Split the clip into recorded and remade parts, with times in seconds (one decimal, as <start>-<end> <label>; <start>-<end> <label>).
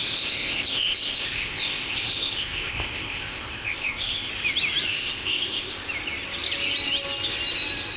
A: 0.0-4.3 remade; 4.3-4.9 recorded; 4.9-5.7 remade; 5.7-8.0 recorded